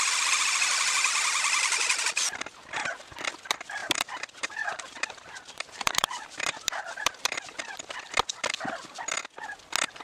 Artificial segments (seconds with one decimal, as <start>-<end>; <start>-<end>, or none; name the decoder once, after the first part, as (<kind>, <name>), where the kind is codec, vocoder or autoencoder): 3.8-7.6 (vocoder, BigVGAN v2)